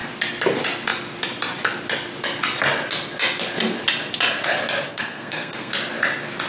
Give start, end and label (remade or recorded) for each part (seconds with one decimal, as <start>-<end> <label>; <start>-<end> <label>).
0.0-4.9 recorded; 4.9-5.7 remade; 5.7-6.5 recorded